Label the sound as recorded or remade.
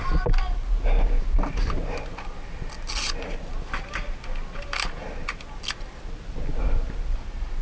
recorded